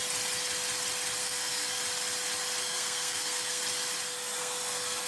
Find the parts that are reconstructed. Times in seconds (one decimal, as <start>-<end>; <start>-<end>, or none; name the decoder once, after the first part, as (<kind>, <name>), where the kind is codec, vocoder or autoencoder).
1.2-1.8 (codec, SNAC); 2.6-3.6; 4.4-5.1